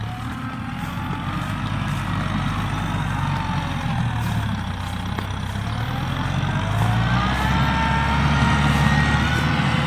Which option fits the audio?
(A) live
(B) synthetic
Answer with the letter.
A